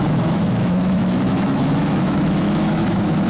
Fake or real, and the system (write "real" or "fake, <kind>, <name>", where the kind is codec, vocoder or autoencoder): fake, autoencoder, DAC-VAE